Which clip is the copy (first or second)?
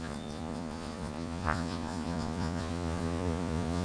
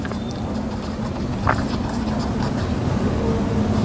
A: first